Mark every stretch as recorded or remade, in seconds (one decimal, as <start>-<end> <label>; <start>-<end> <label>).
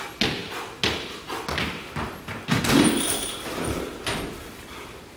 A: 0.0-5.2 recorded